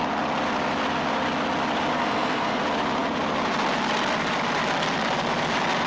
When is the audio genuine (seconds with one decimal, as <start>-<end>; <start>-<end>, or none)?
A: 0.0-1.9; 2.6-5.9